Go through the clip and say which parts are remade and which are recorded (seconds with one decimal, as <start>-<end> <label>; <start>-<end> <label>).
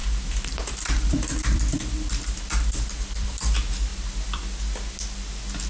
0.0-3.4 remade; 3.4-3.9 recorded; 3.9-4.6 remade; 4.6-5.7 recorded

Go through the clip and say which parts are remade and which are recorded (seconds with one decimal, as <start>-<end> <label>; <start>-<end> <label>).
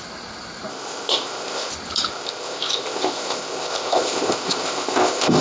0.0-0.7 recorded; 0.7-1.7 remade; 1.7-2.1 recorded; 2.1-5.4 remade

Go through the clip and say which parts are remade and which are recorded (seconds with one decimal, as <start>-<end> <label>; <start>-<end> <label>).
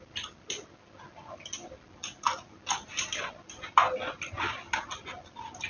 0.0-5.7 recorded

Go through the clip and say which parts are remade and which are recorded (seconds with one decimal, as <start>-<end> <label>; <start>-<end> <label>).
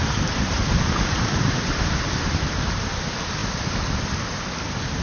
0.0-3.0 remade; 3.0-5.0 recorded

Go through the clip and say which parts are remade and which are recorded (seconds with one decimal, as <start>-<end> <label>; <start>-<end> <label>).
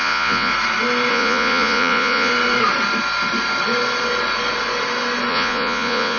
0.0-0.5 remade; 0.5-1.1 recorded; 1.1-2.3 remade; 2.3-5.3 recorded; 5.3-6.2 remade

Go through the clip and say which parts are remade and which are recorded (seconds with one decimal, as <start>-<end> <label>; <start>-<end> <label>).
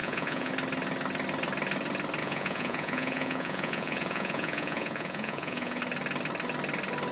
0.0-0.5 remade; 0.5-2.2 recorded; 2.2-5.8 remade; 5.8-7.1 recorded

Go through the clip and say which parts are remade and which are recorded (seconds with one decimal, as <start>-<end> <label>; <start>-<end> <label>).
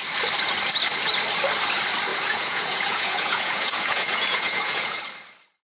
0.0-2.1 recorded; 2.1-5.0 remade; 5.0-5.7 recorded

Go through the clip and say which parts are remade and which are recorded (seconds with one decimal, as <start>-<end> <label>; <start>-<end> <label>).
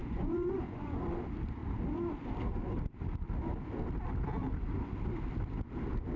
0.0-1.0 remade; 1.0-6.2 recorded